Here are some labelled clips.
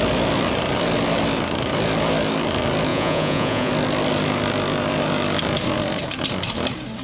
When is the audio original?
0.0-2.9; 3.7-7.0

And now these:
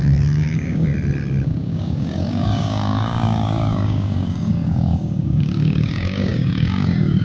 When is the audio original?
0.9-1.4